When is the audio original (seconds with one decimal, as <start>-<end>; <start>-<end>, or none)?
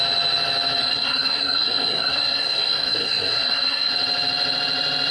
0.0-0.8; 3.9-5.1